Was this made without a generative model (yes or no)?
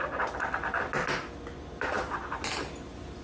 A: yes